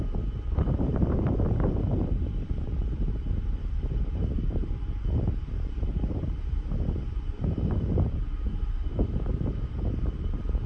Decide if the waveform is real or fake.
fake